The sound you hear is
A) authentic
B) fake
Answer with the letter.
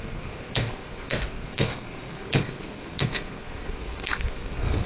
B